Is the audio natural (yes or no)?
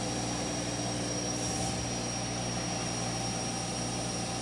yes